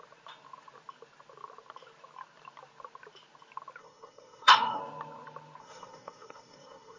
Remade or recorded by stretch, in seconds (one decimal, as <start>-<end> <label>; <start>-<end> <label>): 0.0-3.8 recorded; 3.8-4.8 remade; 4.8-5.6 recorded; 5.6-7.0 remade